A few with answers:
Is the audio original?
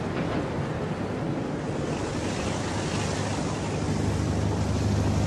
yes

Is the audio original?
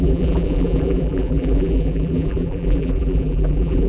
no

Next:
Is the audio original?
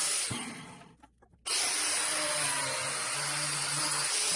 yes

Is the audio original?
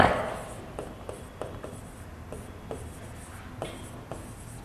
yes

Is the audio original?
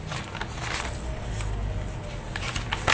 yes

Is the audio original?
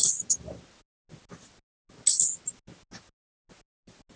yes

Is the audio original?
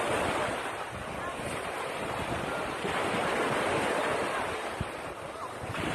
yes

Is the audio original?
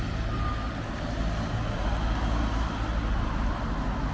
yes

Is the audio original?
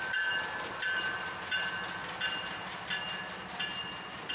yes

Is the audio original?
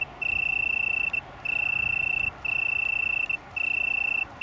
yes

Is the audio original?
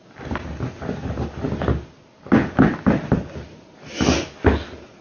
yes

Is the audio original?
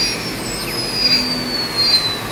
yes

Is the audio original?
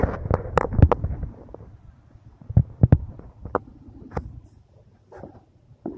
yes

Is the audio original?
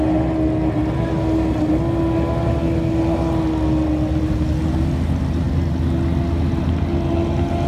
yes